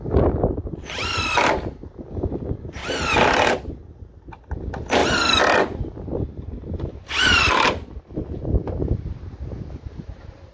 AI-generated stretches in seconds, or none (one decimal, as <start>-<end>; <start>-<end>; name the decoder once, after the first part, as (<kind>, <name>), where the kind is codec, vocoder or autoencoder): 0.0-2.8 (vocoder, BigVGAN v2); 3.6-5.0; 7.4-10.5

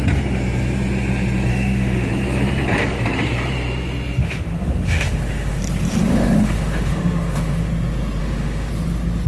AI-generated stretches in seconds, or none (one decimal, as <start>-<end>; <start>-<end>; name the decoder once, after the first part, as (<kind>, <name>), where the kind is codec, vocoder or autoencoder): 1.5-2.1 (autoencoder, DAC-VAE); 4.2-5.6; 6.0-7.7; 8.2-8.7

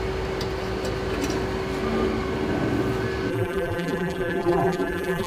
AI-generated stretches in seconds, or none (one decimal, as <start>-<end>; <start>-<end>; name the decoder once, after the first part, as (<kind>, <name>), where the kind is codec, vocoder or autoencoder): 3.3-5.3 (vocoder, BigVGAN v2)